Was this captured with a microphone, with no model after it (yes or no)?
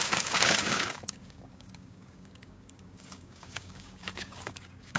no